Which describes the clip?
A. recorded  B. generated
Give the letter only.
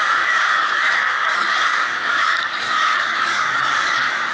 B